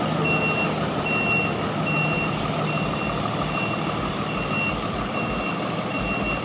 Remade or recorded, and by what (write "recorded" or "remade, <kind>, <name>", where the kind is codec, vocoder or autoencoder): recorded